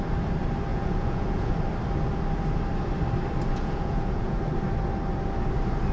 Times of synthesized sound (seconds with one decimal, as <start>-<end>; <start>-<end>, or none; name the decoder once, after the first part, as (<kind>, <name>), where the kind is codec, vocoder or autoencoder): 0.7-1.5 (vocoder, Vocos); 3.5-4.4